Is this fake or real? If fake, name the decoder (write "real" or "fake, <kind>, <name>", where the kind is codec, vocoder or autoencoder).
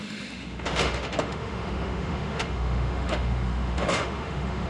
fake, autoencoder, DAC-VAE